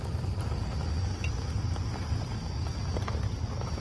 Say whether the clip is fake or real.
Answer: real